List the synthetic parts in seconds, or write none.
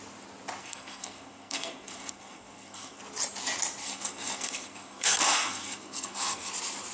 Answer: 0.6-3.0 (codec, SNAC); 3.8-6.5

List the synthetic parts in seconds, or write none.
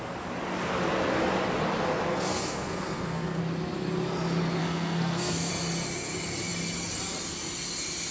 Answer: 2.1-3.4 (codec, SNAC); 4.6-5.5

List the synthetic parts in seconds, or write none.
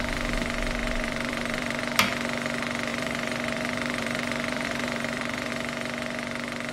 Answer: 0.8-1.8 (vocoder, BigVGAN v2); 2.9-5.5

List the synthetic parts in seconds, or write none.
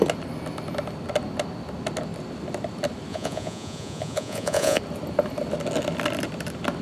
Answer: 3.1-4.8 (vocoder, Vocos)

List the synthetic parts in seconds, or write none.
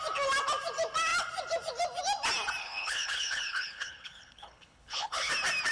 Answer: 2.6-5.3 (codec, HILCodec)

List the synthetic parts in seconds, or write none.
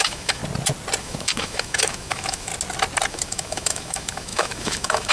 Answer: 0.0-0.4 (autoencoder, DAC-VAE); 1.0-2.5; 3.1-5.1